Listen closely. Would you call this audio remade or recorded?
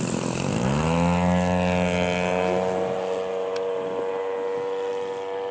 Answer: recorded